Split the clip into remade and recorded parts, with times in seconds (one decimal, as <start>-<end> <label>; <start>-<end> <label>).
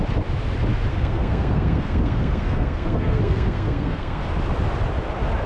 0.0-0.9 recorded; 0.9-4.2 remade; 4.2-5.5 recorded